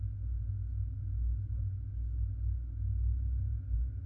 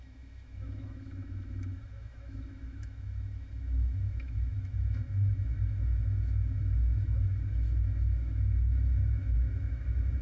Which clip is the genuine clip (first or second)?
first